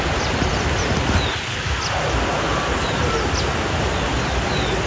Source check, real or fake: real